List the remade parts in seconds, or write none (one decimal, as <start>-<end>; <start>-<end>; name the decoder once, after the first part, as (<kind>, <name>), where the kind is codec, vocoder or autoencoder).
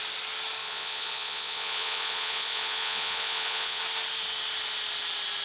0.6-3.8 (vocoder, Vocos)